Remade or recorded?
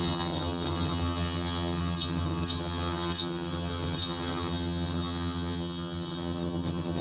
remade